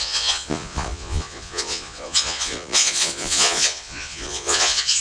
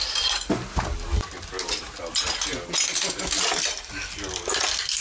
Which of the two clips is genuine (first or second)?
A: second